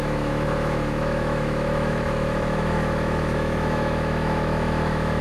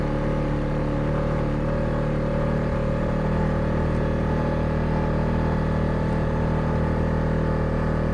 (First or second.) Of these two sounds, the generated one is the first